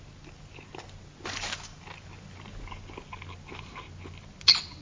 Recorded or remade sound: recorded